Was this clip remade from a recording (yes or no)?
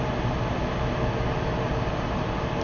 no